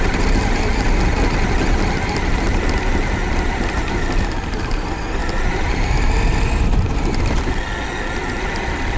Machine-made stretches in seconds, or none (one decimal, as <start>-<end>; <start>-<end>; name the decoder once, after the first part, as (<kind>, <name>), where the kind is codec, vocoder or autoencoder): none